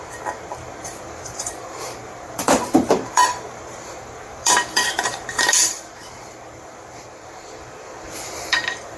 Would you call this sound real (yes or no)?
no